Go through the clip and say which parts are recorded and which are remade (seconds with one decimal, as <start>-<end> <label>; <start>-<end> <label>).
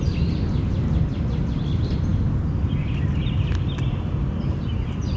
0.0-5.2 recorded